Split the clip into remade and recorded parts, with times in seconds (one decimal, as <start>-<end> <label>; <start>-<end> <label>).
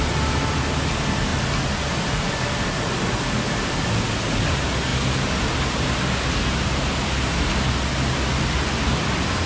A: 0.0-9.5 recorded